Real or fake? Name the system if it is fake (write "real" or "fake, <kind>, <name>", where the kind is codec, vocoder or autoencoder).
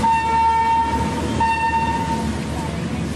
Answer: real